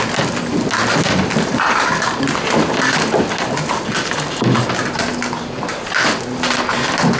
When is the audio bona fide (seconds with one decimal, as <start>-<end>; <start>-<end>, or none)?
0.0-7.2